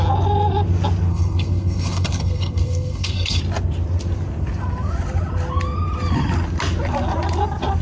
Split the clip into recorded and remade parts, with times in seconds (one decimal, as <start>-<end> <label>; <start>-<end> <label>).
0.0-1.1 recorded; 1.1-3.4 remade; 3.4-7.8 recorded